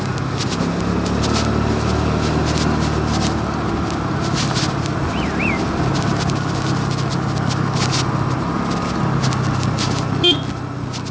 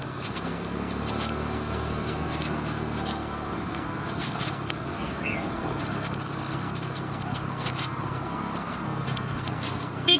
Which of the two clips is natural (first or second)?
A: first